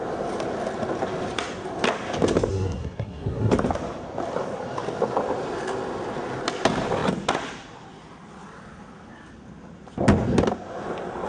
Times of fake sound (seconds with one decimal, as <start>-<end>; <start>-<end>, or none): 2.5-3.5